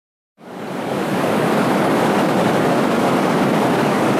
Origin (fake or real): fake